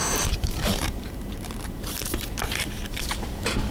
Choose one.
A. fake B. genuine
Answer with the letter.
A